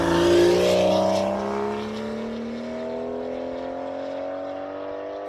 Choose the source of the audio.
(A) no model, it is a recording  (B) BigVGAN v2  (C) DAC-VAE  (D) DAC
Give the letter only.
A